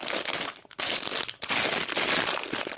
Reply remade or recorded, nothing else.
recorded